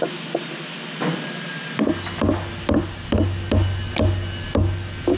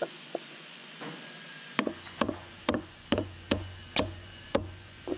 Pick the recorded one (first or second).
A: first